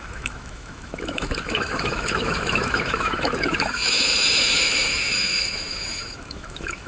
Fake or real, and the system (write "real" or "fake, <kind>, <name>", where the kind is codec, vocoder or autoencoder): fake, autoencoder, DAC-VAE